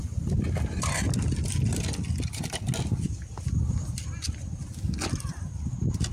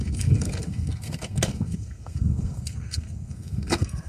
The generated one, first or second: second